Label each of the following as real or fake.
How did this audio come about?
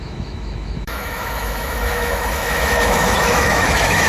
fake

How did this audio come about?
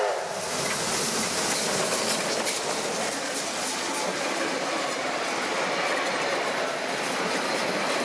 real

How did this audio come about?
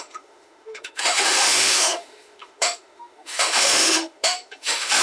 fake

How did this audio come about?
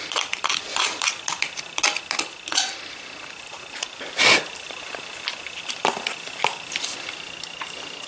real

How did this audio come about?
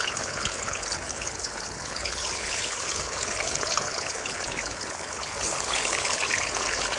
fake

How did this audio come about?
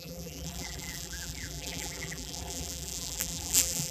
fake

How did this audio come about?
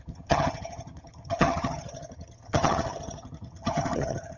fake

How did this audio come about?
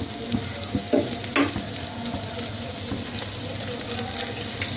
real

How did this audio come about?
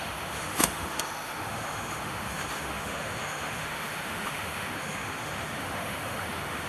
fake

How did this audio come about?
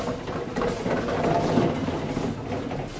real